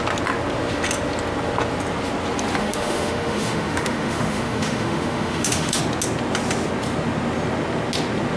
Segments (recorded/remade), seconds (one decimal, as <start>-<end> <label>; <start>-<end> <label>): 0.0-2.6 recorded; 2.6-5.8 remade; 5.8-8.4 recorded